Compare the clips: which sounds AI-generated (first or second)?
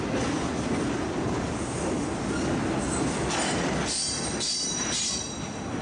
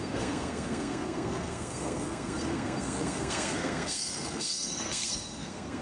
second